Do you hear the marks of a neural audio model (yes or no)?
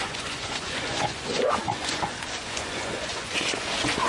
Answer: yes